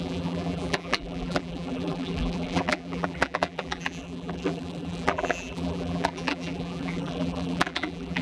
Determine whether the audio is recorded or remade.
remade